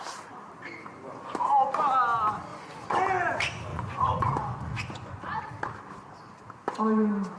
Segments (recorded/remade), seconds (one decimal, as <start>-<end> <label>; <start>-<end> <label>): 0.0-2.5 recorded; 2.5-3.0 remade; 3.0-3.7 recorded; 3.7-5.2 remade; 5.2-7.4 recorded